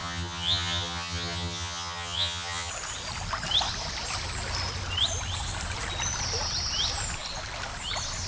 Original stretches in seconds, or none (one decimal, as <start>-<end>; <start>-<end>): 2.7-8.3